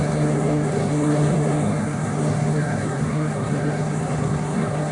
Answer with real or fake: fake